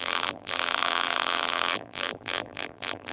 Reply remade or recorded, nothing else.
remade